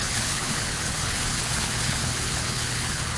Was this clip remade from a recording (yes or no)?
yes